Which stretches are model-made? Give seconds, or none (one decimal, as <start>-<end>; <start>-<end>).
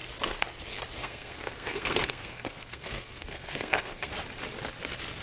1.0-4.1